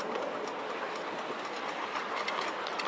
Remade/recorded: recorded